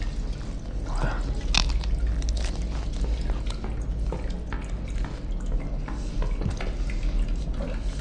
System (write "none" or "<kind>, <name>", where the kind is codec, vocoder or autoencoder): none